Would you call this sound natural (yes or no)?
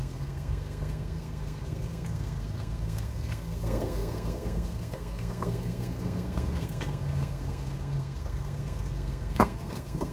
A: no